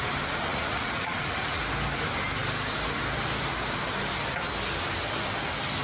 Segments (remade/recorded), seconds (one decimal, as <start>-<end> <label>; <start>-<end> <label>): 0.0-0.5 recorded; 0.5-1.6 remade; 1.6-5.8 recorded

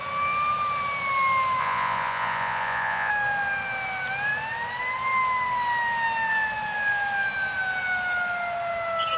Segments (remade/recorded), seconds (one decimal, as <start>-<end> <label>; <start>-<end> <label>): 0.0-1.6 recorded; 1.6-3.1 remade; 3.1-9.2 recorded

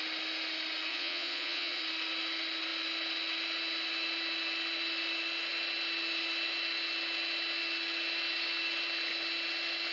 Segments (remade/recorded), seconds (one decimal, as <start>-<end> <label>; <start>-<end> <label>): 0.0-0.9 recorded; 0.9-1.8 remade; 1.8-9.9 recorded

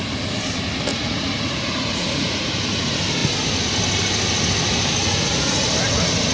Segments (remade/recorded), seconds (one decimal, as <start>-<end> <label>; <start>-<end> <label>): 0.0-0.9 recorded; 0.9-2.8 remade; 2.8-5.0 recorded; 5.0-5.7 remade; 5.7-6.3 recorded

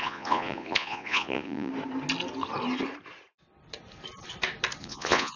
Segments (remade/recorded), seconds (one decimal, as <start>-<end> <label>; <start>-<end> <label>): 0.0-1.7 remade; 1.7-4.8 recorded; 4.8-5.4 remade

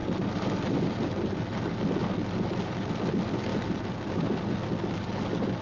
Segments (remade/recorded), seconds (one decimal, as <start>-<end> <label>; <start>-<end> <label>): 0.0-5.6 recorded

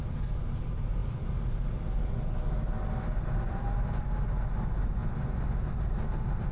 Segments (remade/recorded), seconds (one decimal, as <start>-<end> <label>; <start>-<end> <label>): 0.0-6.5 recorded

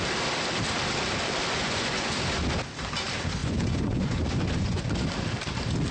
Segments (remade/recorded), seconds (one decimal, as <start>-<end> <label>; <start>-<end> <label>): 0.0-1.6 recorded; 1.6-2.1 remade; 2.1-3.4 recorded; 3.4-4.8 remade; 4.8-5.9 recorded